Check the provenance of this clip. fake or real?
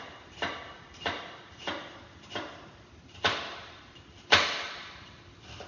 fake